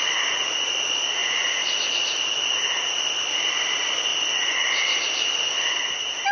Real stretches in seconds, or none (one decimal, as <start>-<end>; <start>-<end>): 0.0-6.3